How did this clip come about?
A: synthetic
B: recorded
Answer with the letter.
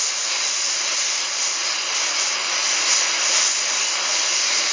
B